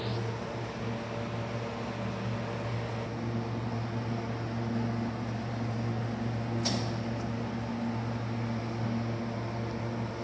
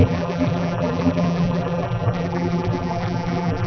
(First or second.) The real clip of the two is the first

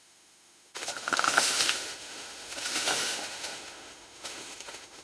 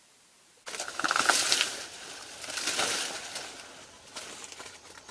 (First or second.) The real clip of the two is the second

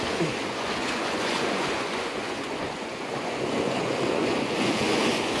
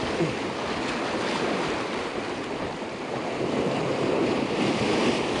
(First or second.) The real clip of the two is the second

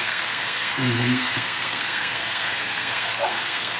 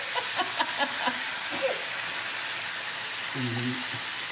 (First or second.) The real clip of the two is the second